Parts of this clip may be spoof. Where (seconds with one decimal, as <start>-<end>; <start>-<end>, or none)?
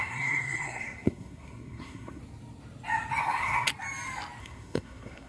0.0-2.2; 3.2-3.7; 4.4-5.3